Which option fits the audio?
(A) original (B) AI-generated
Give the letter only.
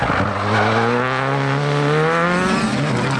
A